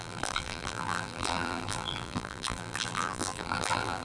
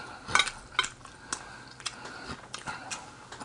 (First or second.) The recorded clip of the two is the second